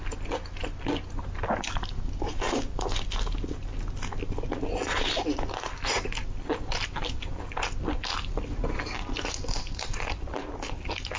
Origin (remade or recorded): recorded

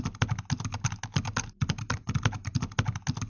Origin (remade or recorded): recorded